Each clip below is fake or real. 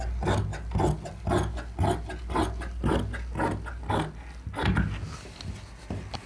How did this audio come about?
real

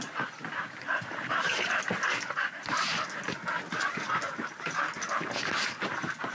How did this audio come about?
real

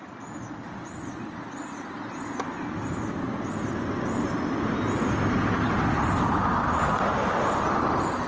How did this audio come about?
real